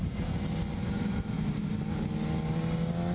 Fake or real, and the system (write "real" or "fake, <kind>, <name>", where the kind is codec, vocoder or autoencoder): real